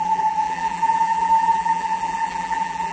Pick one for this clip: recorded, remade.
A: remade